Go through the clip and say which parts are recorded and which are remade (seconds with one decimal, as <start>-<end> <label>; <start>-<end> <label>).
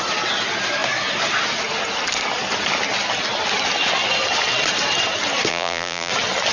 0.0-5.5 recorded; 5.5-6.1 remade; 6.1-6.5 recorded